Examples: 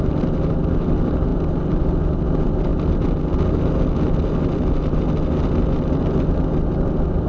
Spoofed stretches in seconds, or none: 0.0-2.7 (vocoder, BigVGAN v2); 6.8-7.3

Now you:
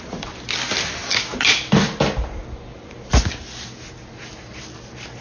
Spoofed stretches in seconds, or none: none

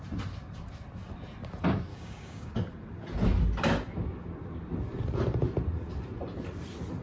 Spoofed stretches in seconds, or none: 1.9-2.5 (codec, DAC)

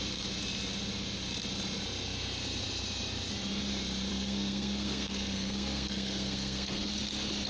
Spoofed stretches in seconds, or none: 4.1-6.9 (codec, SNAC)

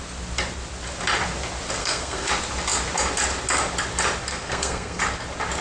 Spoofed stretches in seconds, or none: 1.8-2.3 (codec, SNAC); 4.3-5.0

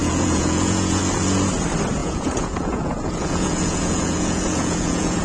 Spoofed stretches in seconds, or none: 0.0-1.0 (vocoder, Vocos); 2.0-5.2

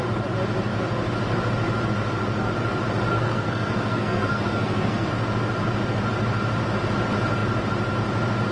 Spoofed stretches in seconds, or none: 3.1-5.1 (codec, SNAC)